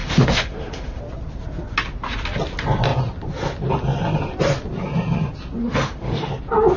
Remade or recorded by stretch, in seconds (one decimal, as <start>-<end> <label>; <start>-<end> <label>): 0.0-1.0 remade; 1.0-5.6 recorded; 5.6-6.3 remade; 6.3-6.8 recorded